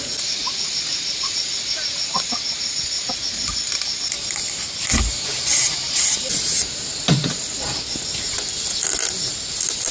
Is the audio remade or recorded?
recorded